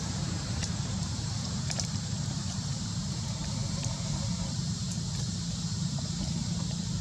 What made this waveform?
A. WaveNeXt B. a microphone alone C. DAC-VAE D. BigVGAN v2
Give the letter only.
D